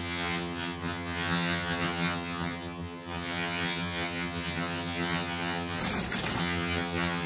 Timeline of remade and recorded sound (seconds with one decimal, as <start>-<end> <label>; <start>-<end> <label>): 0.0-5.8 remade; 5.8-6.4 recorded; 6.4-7.3 remade